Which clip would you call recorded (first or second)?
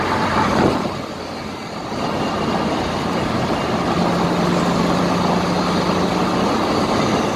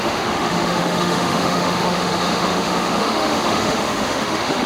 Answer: first